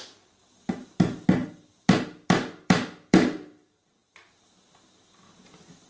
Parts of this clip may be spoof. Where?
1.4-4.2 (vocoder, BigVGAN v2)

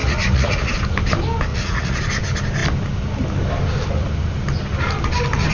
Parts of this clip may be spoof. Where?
0.0-0.7 (vocoder, Vocos); 1.5-2.0

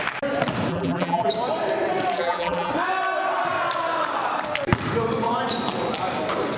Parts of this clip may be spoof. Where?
0.7-1.3 (vocoder, BigVGAN v2); 2.1-2.7

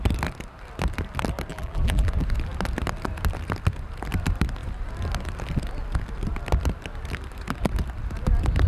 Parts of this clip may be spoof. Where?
1.5-2.1 (vocoder, BigVGAN v2)

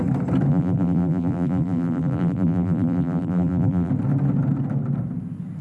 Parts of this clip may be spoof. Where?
0.5-3.9 (vocoder, BigVGAN v2)